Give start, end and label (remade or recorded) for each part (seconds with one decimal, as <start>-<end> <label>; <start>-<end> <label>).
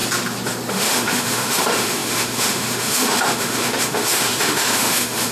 0.0-0.7 recorded; 0.7-5.3 remade